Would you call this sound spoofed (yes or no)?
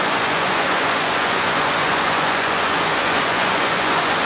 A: yes